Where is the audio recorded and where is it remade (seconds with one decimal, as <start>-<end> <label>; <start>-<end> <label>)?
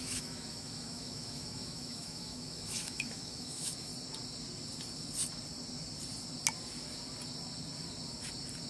0.0-3.9 remade; 3.9-8.7 recorded